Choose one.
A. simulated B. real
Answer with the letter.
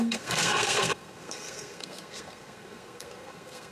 A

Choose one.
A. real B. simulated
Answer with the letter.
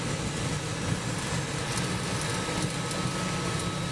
A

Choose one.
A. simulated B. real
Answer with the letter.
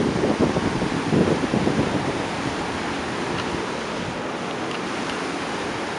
B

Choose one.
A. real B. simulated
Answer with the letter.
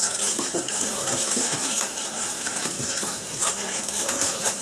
B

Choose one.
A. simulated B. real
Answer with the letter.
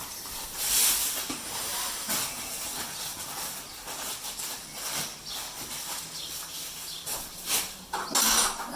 B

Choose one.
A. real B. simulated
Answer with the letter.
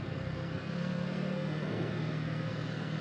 B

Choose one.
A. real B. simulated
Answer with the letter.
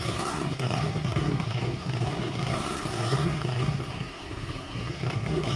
B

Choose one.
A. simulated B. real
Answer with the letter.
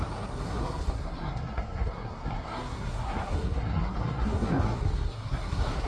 A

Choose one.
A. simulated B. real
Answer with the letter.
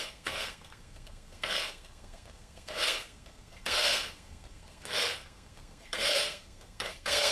A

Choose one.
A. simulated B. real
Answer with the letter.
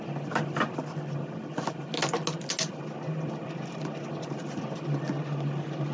B